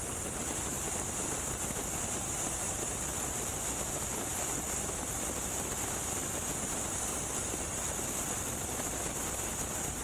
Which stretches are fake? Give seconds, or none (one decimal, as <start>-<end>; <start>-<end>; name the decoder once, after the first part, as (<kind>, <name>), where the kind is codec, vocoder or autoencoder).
0.0-0.8 (vocoder, BigVGAN v2)